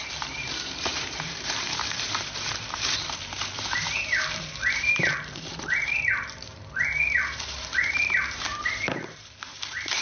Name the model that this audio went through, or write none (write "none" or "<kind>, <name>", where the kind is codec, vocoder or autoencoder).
vocoder, BigVGAN v2